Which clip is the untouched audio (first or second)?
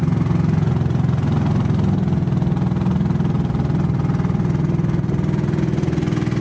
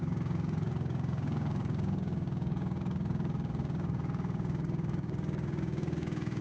first